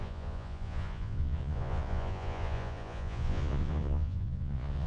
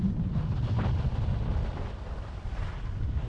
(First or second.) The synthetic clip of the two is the first